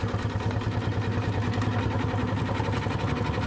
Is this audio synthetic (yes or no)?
no